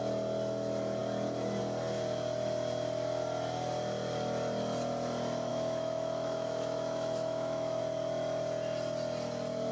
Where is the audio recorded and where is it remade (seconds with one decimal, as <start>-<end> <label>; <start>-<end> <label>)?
0.0-5.5 recorded; 5.5-7.8 remade; 7.8-9.7 recorded